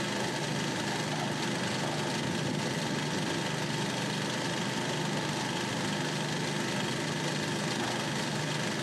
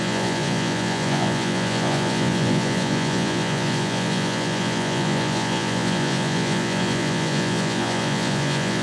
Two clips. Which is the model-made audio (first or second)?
second